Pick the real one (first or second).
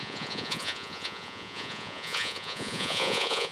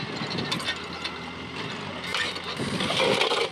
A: second